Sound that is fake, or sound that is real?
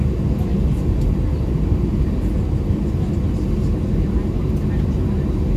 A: real